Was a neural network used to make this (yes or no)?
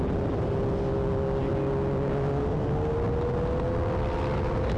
no